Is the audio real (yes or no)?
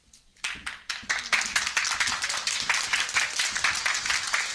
yes